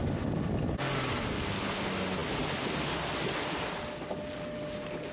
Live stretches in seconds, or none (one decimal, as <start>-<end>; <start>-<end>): 0.0-5.1